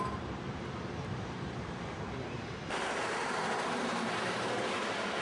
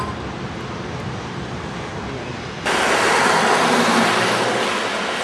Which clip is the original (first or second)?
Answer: second